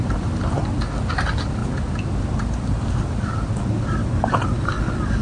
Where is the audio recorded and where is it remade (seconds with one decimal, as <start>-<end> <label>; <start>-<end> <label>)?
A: 0.0-5.2 recorded